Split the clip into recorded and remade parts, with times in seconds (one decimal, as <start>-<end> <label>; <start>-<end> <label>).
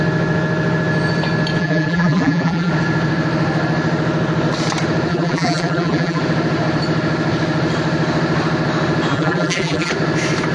0.0-1.6 recorded; 1.6-2.7 remade; 2.7-5.1 recorded; 5.1-6.2 remade; 6.2-9.1 recorded; 9.1-9.9 remade; 9.9-10.5 recorded